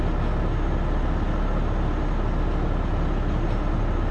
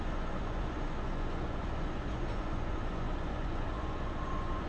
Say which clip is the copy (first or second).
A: second